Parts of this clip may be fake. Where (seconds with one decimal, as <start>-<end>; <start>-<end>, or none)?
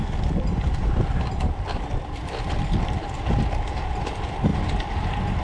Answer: 0.8-3.2